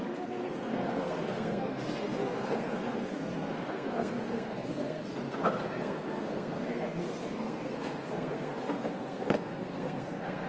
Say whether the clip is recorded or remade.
remade